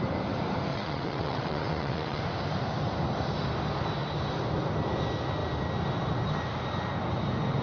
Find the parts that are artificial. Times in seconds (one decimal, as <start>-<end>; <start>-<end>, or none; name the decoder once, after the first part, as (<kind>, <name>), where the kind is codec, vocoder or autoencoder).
0.7-2.2 (vocoder, WaveNeXt)